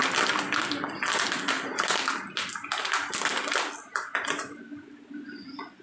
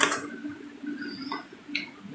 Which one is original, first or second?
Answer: first